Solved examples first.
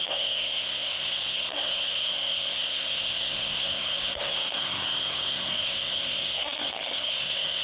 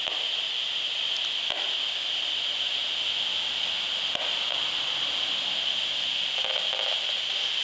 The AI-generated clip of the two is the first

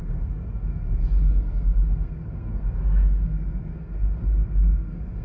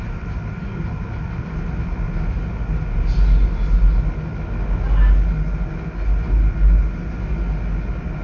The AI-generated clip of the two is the first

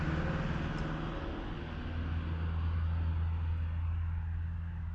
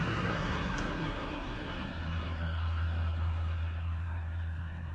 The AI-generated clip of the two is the second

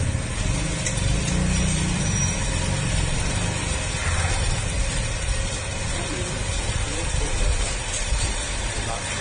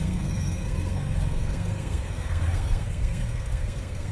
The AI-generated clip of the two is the second